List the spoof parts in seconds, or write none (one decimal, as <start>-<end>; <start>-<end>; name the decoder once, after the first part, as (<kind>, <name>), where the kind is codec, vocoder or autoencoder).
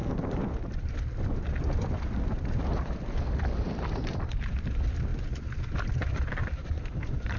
none